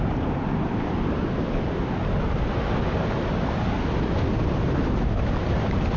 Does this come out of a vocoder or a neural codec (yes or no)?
no